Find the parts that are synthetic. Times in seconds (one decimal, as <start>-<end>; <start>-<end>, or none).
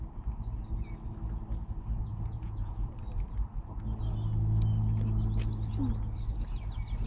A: 2.1-2.9